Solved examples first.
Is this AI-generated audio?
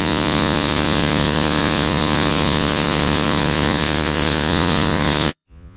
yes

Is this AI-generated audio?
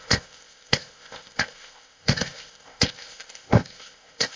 yes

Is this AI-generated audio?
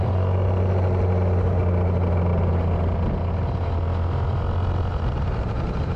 no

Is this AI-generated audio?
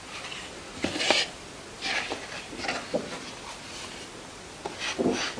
no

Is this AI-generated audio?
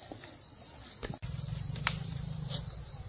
no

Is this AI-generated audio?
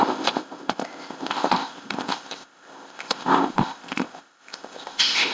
yes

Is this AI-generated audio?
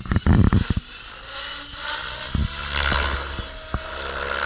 no